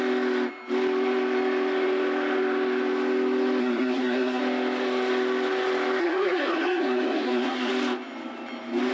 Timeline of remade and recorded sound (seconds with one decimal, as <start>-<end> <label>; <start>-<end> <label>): 0.0-3.6 recorded; 3.6-4.4 remade; 4.4-6.0 recorded; 6.0-7.7 remade; 7.7-8.9 recorded